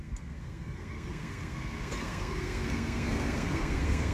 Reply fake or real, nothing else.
fake